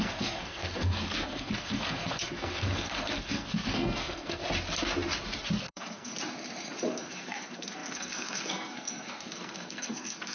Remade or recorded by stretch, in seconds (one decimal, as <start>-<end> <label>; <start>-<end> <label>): 0.0-4.4 remade; 4.4-5.6 recorded; 5.6-6.1 remade; 6.1-6.9 recorded; 6.9-10.3 remade